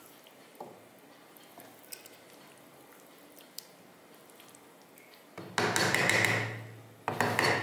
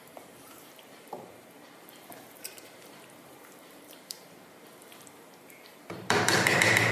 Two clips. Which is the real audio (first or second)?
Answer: first